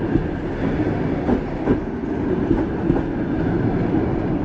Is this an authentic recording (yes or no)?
yes